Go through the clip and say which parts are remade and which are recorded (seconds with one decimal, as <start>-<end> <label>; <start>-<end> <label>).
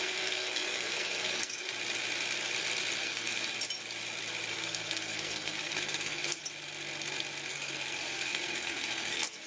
0.0-1.7 remade; 1.7-3.0 recorded; 3.0-3.4 remade; 3.4-4.5 recorded; 4.5-6.4 remade; 6.4-7.5 recorded; 7.5-9.5 remade